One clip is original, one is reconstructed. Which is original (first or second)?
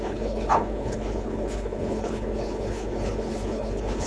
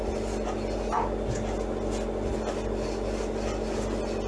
second